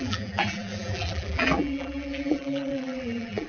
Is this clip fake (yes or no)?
yes